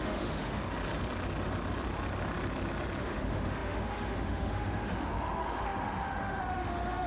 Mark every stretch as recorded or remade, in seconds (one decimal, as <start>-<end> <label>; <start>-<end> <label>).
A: 0.0-0.6 remade; 0.6-3.0 recorded; 3.0-7.1 remade